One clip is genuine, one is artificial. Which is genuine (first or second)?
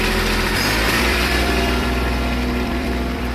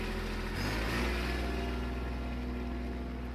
second